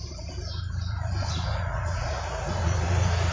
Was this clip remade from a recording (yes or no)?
yes